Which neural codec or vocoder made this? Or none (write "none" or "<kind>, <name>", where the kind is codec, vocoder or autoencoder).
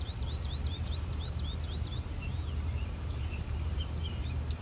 vocoder, BigVGAN v2